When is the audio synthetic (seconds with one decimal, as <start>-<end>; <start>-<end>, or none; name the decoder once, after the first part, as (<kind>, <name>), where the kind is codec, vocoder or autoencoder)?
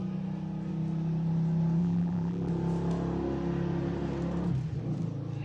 1.8-2.5 (vocoder, BigVGAN v2)